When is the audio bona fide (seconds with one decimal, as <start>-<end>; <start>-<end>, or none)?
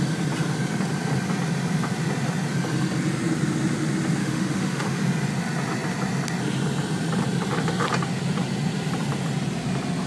0.0-4.2; 5.0-10.1